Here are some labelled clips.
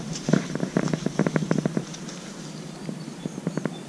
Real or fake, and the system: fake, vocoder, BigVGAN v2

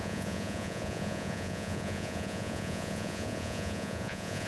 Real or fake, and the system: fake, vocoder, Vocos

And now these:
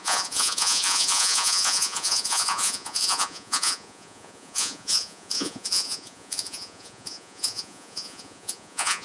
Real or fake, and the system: fake, vocoder, Vocos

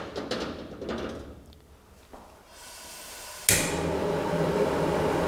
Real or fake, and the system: real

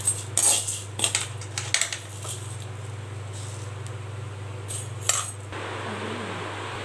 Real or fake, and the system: real